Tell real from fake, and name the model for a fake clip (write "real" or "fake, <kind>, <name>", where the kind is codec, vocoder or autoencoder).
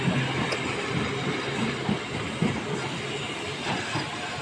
real